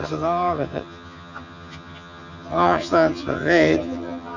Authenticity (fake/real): fake